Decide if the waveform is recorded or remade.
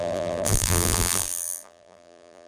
remade